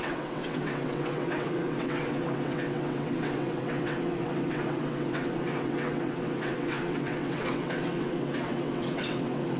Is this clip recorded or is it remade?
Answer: remade